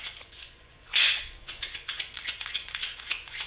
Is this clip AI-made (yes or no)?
yes